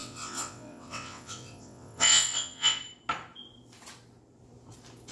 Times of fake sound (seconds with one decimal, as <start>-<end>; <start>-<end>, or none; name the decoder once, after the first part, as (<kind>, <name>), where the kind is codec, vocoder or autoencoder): 0.0-2.8 (vocoder, WaveNeXt)